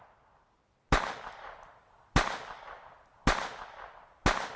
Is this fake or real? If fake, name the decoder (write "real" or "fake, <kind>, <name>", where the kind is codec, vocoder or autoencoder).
real